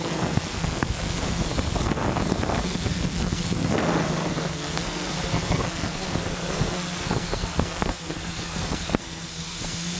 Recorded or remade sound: remade